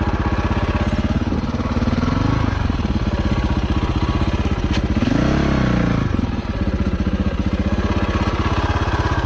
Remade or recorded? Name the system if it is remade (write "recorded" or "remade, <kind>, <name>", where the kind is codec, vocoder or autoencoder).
recorded